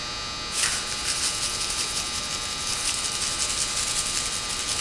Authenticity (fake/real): real